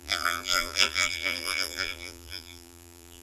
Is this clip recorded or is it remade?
remade